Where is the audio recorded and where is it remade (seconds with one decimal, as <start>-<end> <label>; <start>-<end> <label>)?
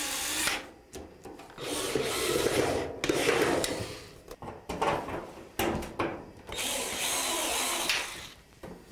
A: 0.0-6.1 recorded; 6.1-7.5 remade; 7.5-8.9 recorded